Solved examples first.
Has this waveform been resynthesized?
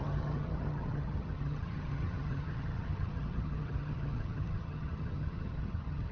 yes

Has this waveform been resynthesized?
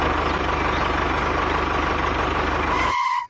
no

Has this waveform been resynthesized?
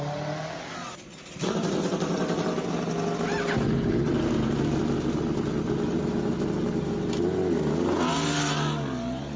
no